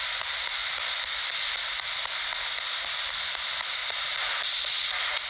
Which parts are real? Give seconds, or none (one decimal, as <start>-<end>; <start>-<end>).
0.0-5.3